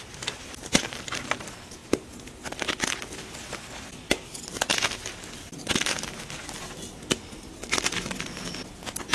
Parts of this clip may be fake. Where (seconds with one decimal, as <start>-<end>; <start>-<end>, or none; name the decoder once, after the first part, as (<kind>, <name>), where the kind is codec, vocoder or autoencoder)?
none